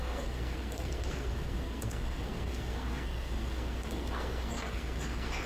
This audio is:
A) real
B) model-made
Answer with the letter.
B